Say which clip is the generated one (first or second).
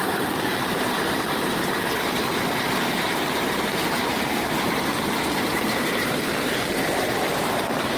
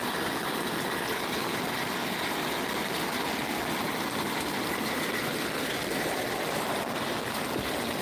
first